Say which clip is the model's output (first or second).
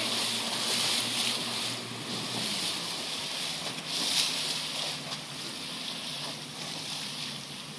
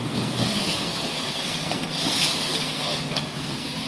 second